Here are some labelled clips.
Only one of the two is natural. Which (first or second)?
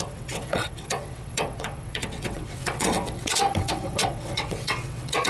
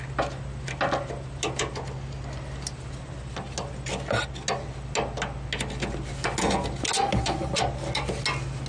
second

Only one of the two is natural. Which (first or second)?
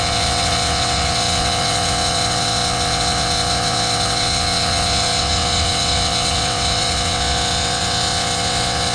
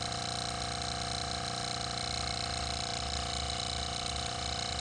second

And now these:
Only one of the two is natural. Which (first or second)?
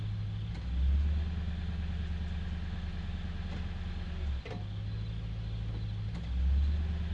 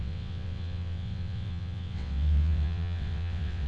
first